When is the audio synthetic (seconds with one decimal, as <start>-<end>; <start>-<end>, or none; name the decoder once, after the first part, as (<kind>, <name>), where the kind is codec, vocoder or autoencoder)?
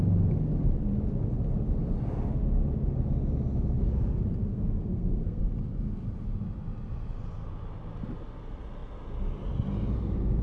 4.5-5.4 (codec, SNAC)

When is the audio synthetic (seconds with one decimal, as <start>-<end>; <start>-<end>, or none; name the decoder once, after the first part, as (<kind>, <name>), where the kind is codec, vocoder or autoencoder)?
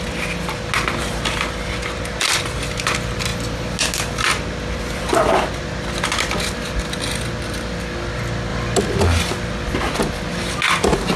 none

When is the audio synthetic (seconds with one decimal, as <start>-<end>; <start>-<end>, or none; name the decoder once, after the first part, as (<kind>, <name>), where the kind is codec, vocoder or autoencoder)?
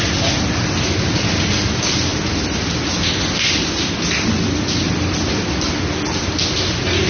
none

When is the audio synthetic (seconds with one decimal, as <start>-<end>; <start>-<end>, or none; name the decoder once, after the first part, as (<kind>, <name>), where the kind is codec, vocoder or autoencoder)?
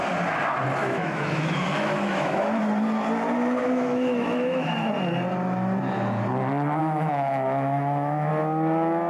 0.8-2.6 (autoencoder, DAC-VAE); 3.6-4.9; 6.8-8.3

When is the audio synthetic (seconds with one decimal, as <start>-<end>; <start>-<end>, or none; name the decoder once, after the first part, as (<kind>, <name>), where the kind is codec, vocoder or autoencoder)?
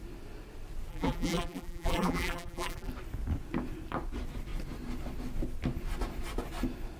0.9-2.9 (vocoder, BigVGAN v2)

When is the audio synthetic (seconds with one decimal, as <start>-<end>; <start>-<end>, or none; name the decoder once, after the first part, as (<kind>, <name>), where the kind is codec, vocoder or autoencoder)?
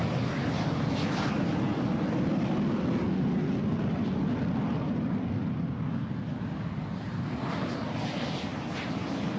none